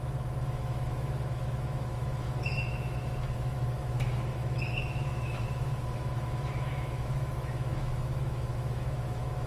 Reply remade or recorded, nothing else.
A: remade